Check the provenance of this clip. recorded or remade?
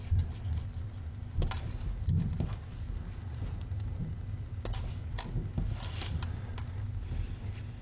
recorded